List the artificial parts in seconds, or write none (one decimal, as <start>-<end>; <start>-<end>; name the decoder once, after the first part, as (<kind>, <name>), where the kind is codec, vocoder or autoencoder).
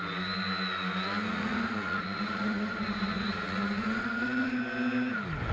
1.3-4.6 (vocoder, Vocos)